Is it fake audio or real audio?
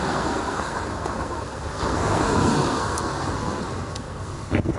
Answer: fake